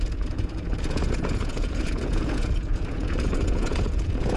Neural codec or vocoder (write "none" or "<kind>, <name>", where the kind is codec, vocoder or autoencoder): vocoder, Vocos